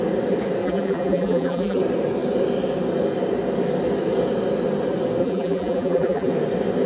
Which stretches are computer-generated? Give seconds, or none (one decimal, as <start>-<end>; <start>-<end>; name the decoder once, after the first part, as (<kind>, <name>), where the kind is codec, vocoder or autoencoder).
0.6-1.8 (vocoder, BigVGAN v2); 5.2-6.3